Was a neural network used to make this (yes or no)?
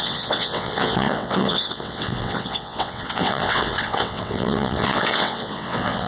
yes